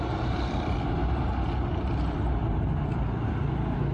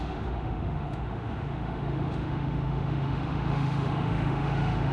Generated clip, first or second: second